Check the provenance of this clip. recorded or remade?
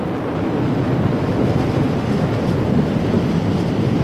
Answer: recorded